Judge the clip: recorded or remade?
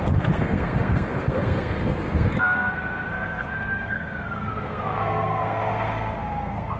remade